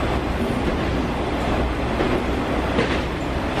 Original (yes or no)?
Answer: yes